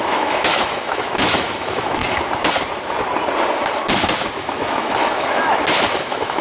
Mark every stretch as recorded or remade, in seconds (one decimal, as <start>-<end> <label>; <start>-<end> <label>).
0.0-2.0 remade; 2.0-4.4 recorded; 4.4-6.4 remade